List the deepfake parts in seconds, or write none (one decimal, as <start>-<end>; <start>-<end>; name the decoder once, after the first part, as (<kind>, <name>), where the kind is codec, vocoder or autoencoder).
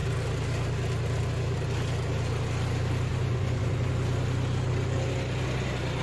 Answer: 3.1-3.9 (vocoder, Vocos)